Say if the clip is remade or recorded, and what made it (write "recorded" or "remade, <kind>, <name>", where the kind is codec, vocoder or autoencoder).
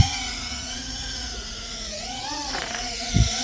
remade, vocoder, Vocos